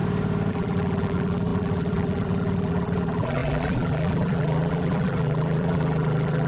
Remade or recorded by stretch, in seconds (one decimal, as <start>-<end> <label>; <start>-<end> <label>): 0.0-0.5 recorded; 0.5-6.5 remade